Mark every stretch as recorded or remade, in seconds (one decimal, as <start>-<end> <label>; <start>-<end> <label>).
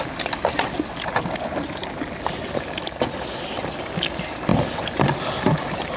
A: 0.0-6.0 recorded